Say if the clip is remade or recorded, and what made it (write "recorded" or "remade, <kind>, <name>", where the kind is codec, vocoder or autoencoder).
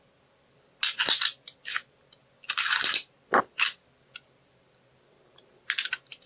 recorded